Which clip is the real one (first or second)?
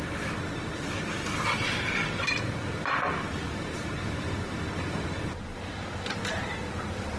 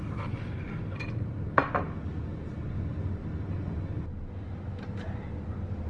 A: second